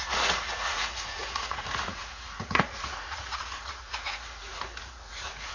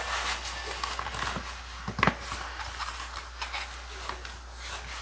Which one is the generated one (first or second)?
first